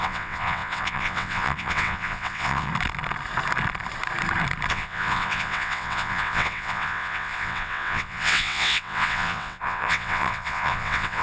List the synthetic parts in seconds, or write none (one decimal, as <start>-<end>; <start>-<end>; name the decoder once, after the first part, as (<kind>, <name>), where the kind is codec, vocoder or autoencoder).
0.0-2.7 (vocoder, WaveNeXt); 4.7-11.2